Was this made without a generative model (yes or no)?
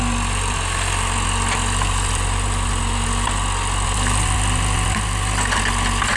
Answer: yes